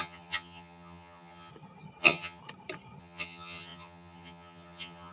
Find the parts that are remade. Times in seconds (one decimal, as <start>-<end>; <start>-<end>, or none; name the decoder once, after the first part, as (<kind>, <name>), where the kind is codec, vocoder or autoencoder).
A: 0.0-1.5 (vocoder, HiFi-GAN); 2.0-2.4; 3.0-5.1

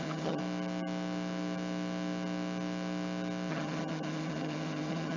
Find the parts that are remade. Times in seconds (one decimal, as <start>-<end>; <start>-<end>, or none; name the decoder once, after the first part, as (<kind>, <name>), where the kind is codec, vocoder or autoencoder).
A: 0.0-0.4 (vocoder, HiFi-GAN); 3.5-5.2